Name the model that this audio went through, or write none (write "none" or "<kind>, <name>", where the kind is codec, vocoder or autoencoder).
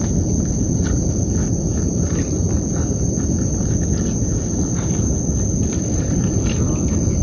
none